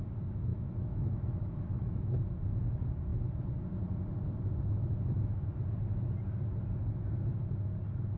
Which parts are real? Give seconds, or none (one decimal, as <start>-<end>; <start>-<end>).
0.0-0.5; 2.1-8.2